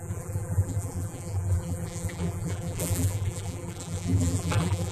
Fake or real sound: fake